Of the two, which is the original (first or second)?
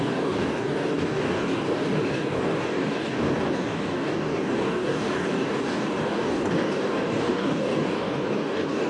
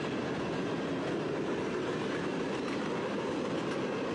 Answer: second